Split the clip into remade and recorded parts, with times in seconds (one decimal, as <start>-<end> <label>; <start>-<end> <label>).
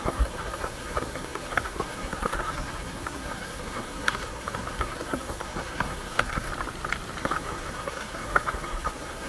0.0-6.5 remade; 6.5-7.2 recorded; 7.2-9.3 remade